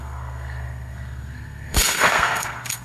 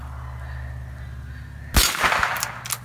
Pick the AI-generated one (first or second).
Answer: first